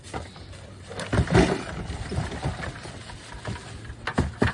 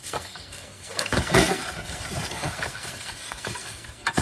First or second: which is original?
first